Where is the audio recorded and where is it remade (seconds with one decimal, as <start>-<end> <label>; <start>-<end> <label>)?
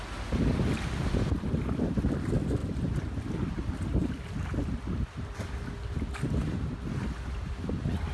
0.0-8.1 recorded